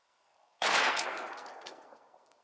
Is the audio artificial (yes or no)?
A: yes